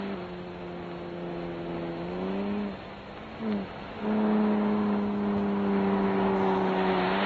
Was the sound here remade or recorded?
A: recorded